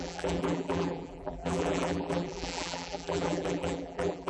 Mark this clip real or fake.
fake